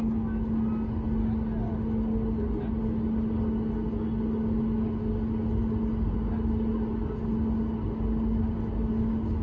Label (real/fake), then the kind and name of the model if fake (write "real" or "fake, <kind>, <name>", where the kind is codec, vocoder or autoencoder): real